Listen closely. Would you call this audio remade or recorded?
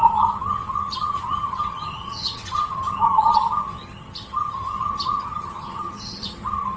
remade